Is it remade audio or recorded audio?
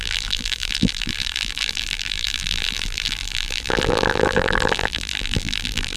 remade